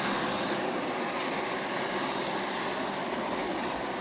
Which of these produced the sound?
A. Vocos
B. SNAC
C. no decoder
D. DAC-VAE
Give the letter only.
C